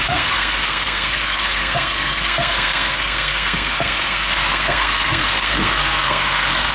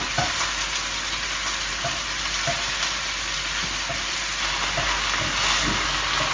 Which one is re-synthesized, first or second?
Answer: first